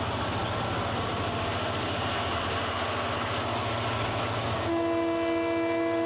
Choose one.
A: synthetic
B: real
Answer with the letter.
B